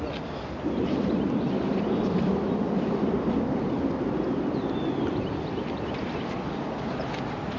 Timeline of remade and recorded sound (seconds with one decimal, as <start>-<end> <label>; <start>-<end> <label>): 0.0-7.6 remade